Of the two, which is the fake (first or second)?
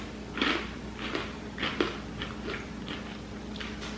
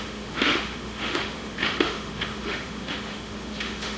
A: second